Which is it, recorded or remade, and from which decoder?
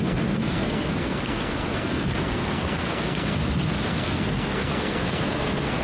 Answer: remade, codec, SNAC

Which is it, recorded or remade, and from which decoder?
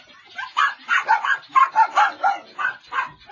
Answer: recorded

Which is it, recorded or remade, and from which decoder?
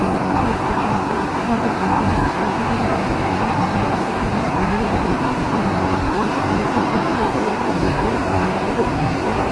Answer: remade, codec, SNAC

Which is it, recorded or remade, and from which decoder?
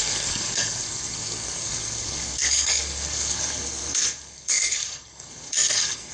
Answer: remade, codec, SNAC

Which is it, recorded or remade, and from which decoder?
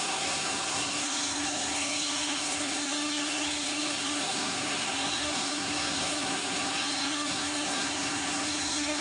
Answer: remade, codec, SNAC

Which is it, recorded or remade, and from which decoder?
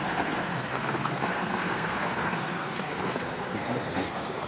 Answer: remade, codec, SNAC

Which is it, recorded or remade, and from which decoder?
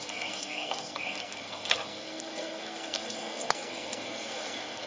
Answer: remade, codec, SNAC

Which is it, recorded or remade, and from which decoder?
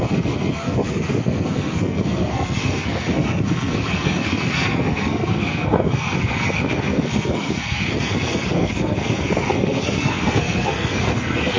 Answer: remade, codec, SNAC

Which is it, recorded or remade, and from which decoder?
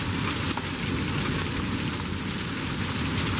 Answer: recorded